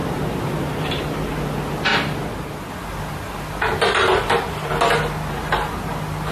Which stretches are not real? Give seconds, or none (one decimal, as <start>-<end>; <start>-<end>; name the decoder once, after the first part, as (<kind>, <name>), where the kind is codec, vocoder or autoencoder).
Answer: 1.9-4.7 (vocoder, BigVGAN v2)